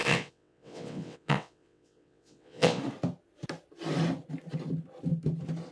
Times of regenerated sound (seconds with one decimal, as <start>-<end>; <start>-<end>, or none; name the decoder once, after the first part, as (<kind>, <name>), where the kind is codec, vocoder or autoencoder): 0.0-2.8 (vocoder, WaveNeXt)